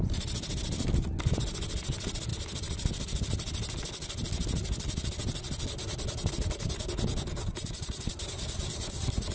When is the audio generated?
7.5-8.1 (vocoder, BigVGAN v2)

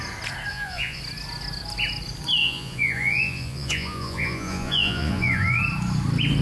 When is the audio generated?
0.5-1.0 (vocoder, Vocos); 2.4-5.6

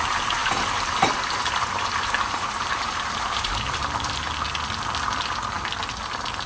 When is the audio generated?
0.4-4.3 (vocoder, BigVGAN v2)

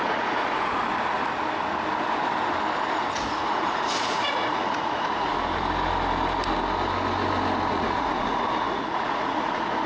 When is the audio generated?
0.0-0.8 (vocoder, Vocos); 3.2-5.3; 7.7-9.9

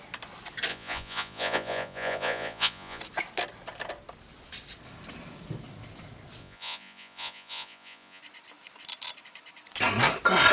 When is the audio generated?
0.7-3.0 (vocoder, Vocos); 6.4-8.2

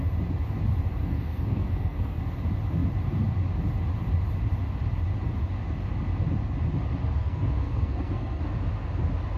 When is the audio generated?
0.9-2.2 (codec, SNAC); 7.2-8.4

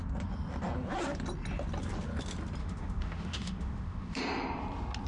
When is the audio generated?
2.6-4.2 (autoencoder, DAC-VAE)